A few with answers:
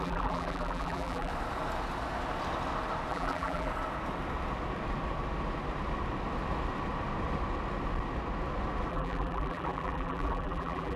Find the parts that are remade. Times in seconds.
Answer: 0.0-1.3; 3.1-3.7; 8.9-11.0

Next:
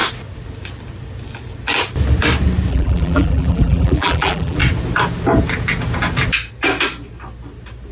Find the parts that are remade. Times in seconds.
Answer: 2.7-4.6

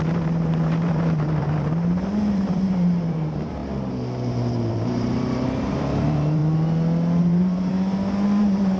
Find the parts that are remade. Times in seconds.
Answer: 0.0-3.6; 4.7-6.4; 7.2-7.7; 8.4-8.8

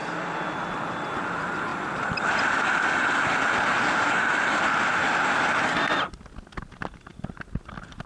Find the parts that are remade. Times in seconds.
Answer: 1.7-2.4

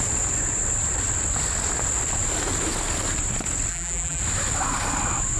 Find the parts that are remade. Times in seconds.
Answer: 3.7-4.2